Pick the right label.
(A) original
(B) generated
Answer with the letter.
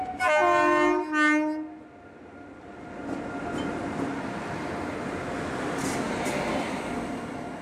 A